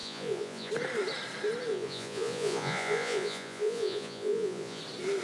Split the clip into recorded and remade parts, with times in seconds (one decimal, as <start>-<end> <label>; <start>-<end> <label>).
0.0-0.7 remade; 0.7-1.7 recorded; 1.7-4.8 remade; 4.8-5.2 recorded